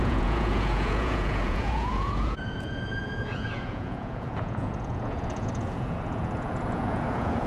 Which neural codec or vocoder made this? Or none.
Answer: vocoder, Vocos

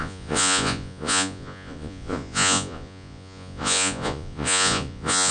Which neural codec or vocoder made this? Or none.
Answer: vocoder, Vocos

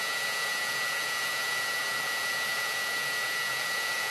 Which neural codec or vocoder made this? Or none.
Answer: vocoder, Vocos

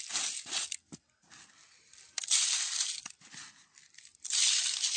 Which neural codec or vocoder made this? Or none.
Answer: none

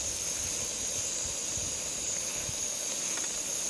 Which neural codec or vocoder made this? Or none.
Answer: none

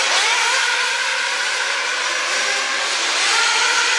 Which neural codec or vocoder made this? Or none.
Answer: none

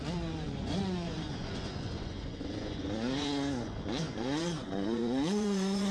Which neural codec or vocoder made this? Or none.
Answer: vocoder, Vocos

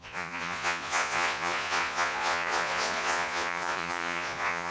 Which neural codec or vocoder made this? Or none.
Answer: vocoder, Vocos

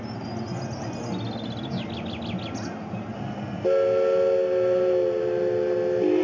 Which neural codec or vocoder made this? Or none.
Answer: none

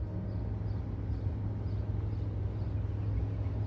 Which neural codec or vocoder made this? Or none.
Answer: none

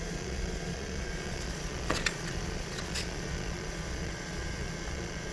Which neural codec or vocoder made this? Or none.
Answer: vocoder, Vocos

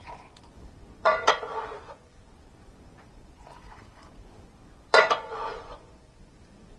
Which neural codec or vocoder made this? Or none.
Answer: vocoder, Vocos